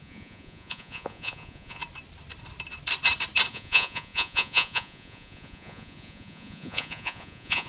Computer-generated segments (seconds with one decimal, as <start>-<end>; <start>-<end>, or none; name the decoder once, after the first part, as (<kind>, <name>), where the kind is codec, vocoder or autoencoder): 0.0-1.8 (vocoder, Vocos); 3.5-7.7